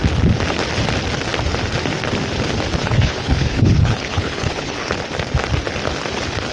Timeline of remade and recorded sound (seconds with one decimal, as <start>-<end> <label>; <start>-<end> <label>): 0.0-2.8 recorded; 2.8-4.9 remade; 4.9-6.5 recorded